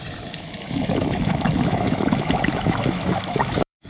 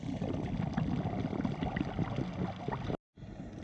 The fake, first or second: first